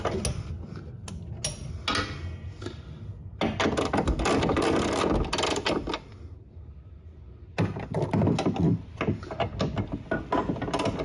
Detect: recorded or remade recorded